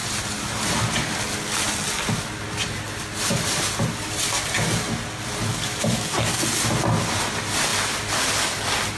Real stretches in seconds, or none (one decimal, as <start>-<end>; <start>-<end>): 0.0-5.5; 6.4-9.0